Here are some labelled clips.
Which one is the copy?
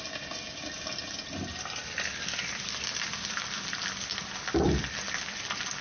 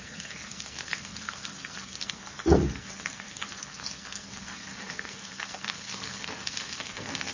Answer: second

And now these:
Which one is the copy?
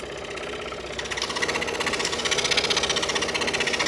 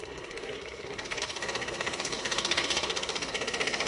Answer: second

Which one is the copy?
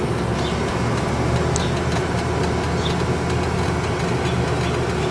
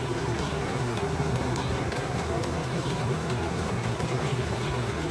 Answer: second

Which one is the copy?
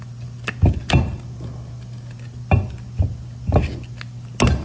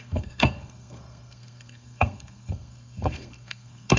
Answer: second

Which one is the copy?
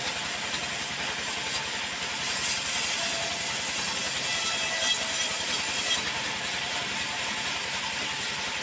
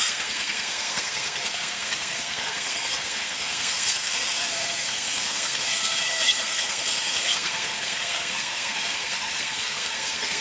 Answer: second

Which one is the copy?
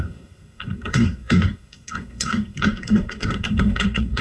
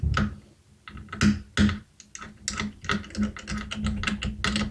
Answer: first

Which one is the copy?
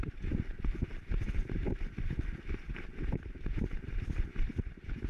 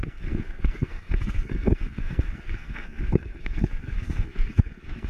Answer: second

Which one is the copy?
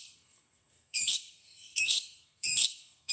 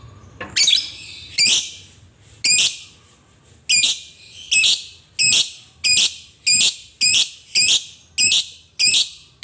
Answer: first